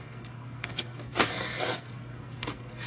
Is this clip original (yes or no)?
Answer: no